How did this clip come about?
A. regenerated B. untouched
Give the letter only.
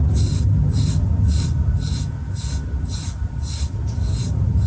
B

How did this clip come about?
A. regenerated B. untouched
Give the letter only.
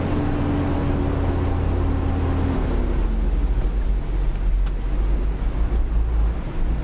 B